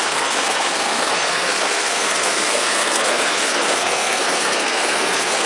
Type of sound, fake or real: fake